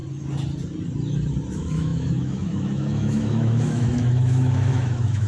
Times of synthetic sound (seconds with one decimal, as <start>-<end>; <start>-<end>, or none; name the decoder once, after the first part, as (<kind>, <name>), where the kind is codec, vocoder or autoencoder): 1.5-5.3 (autoencoder, DAC-VAE)